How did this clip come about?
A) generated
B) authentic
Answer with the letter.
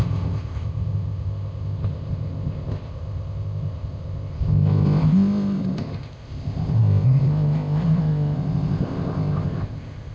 A